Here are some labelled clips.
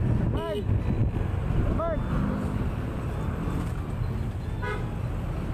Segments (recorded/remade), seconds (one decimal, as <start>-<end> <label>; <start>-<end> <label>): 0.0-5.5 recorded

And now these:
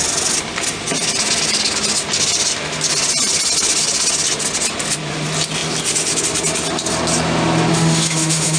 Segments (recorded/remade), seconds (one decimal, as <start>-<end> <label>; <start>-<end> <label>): 0.0-7.7 recorded; 7.7-8.6 remade

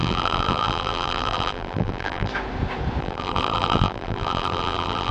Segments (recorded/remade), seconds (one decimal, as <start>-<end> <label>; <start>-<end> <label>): 0.0-2.3 remade; 2.3-3.0 recorded; 3.0-5.1 remade

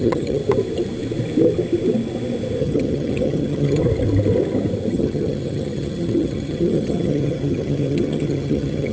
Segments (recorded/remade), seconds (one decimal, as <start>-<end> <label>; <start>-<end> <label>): 0.0-0.4 remade; 0.4-2.6 recorded; 2.6-3.8 remade; 3.8-4.9 recorded; 4.9-8.9 remade

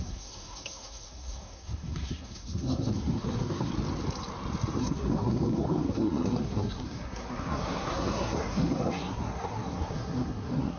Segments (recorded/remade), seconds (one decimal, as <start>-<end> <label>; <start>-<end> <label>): 0.0-3.7 remade; 3.7-4.8 recorded; 4.8-10.8 remade

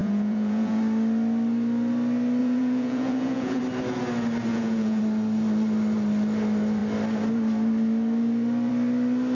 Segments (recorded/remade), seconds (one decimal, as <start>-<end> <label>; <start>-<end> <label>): 0.0-0.8 remade; 0.8-2.4 recorded; 2.4-3.6 remade; 3.6-4.5 recorded; 4.5-5.0 remade; 5.0-9.3 recorded